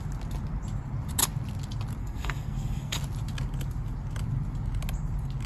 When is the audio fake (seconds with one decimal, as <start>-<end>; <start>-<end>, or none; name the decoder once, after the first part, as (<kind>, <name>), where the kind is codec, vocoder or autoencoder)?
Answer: 2.0-3.0 (codec, SNAC)